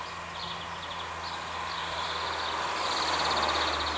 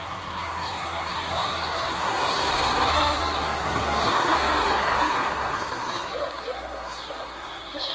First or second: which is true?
first